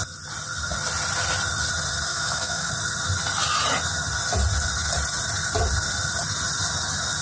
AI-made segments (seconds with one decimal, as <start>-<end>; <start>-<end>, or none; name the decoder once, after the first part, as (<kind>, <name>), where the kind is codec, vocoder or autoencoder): 2.1-2.7 (autoencoder, DAC-VAE)